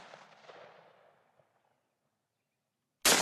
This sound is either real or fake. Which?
real